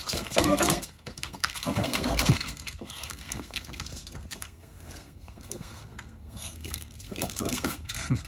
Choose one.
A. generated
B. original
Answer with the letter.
A